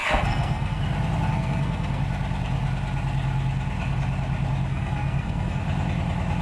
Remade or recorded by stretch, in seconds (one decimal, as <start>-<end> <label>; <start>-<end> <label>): 0.0-0.8 remade; 0.8-1.3 recorded; 1.3-2.0 remade; 2.0-4.7 recorded; 4.7-5.6 remade; 5.6-6.4 recorded